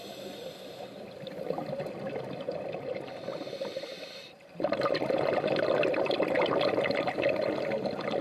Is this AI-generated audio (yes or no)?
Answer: no